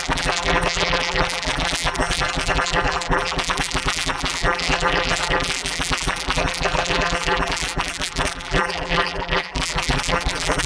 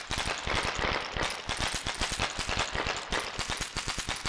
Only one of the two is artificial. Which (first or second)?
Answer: first